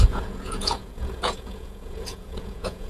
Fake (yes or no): yes